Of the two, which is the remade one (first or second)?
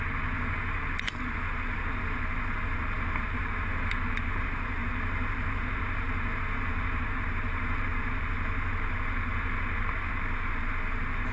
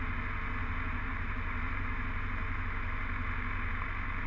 first